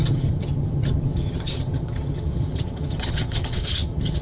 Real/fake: fake